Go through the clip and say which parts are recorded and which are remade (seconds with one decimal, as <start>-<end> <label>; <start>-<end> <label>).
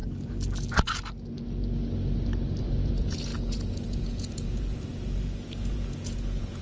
0.0-2.6 recorded; 2.6-6.6 remade